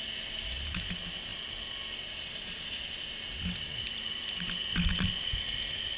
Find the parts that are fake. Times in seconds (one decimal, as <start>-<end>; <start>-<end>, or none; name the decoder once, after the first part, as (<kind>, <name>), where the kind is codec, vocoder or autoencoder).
none